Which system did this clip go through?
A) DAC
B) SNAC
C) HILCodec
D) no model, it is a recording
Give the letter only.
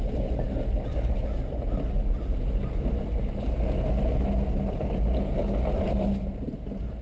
D